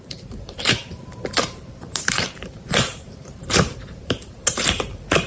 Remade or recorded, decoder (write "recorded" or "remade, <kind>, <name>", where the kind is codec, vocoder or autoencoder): remade, vocoder, BigVGAN v2